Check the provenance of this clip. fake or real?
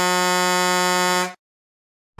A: real